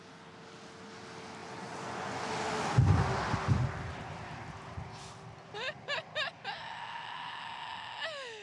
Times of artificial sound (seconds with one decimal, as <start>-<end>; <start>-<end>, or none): 1.4-2.3